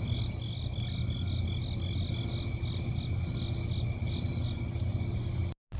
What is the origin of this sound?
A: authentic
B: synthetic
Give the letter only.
A